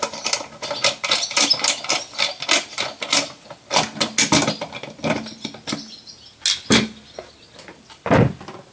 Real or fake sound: real